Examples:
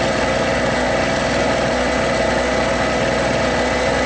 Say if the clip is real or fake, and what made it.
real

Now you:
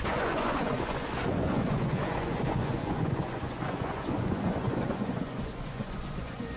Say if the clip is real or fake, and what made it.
fake, vocoder, Vocos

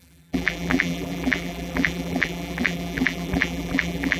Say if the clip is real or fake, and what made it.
fake, vocoder, BigVGAN v2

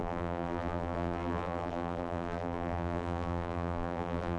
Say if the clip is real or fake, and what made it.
fake, vocoder, BigVGAN v2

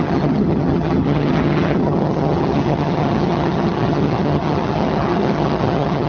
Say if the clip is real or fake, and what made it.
fake, vocoder, HiFi-GAN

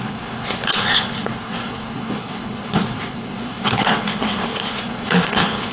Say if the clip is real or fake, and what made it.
fake, codec, HILCodec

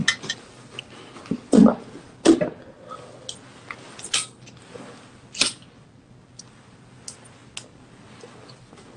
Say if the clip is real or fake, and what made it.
real